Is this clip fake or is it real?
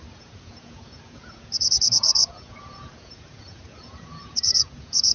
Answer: fake